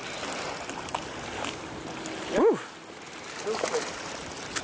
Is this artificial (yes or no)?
no